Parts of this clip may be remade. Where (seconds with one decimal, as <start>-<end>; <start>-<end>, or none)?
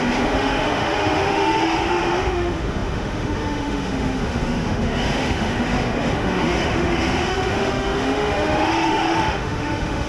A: 0.0-10.1